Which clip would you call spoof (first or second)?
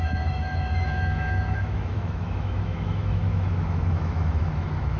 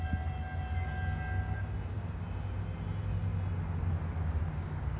first